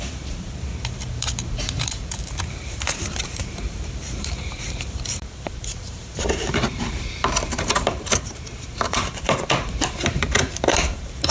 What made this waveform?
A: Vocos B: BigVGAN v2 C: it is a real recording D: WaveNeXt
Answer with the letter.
B